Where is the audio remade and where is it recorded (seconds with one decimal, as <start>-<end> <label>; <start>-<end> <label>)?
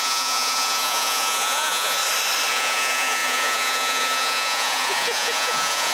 0.0-2.0 remade; 2.0-2.5 recorded; 2.5-5.9 remade